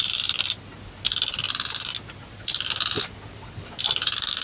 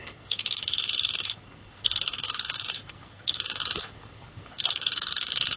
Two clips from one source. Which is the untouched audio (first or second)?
first